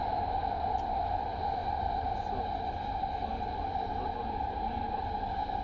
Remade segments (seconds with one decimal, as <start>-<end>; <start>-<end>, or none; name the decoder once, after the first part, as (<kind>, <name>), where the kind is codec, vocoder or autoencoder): none

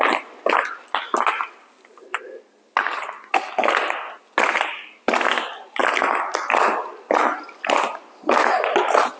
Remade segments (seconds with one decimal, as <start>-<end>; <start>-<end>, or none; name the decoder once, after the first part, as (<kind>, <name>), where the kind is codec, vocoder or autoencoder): none